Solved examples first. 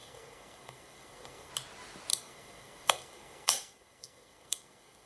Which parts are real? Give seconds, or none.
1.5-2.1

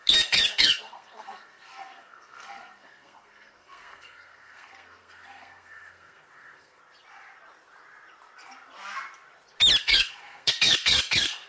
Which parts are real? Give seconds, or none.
6.8-9.8

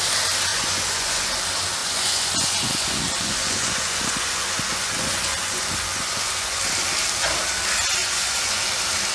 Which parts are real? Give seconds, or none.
0.0-0.5; 1.2-1.8; 6.6-8.0; 8.6-9.1

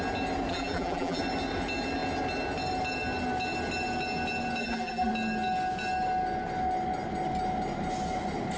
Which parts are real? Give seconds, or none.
0.0-0.5; 1.2-4.6; 5.1-8.6

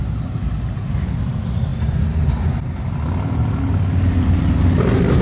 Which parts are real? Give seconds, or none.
0.0-5.2

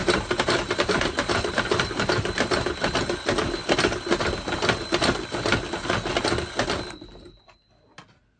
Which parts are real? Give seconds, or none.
1.7-8.4

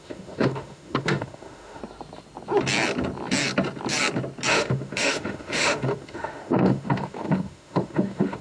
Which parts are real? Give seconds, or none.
1.8-4.5

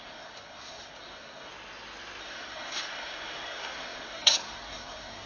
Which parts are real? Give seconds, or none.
1.5-2.2